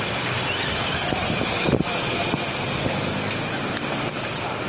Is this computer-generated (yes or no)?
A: yes